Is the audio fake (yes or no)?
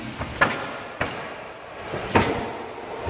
no